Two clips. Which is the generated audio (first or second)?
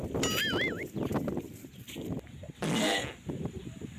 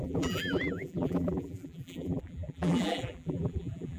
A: second